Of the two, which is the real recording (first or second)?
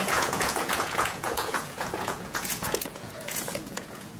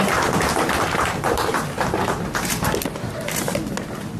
second